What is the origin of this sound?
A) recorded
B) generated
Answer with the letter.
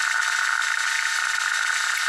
A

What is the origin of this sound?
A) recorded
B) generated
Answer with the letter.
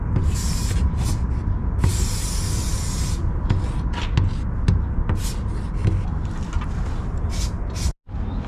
A